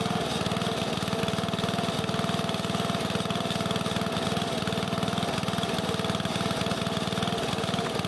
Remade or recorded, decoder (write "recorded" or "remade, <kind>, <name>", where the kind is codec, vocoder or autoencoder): recorded